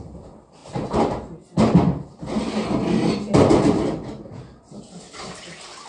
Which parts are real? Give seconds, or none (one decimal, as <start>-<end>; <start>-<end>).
0.0-5.9